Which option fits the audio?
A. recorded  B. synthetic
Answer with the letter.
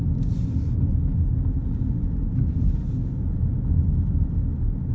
A